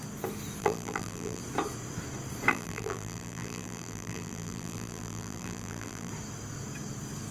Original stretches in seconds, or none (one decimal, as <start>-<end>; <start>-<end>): 0.0-0.6; 1.4-2.5; 6.1-7.3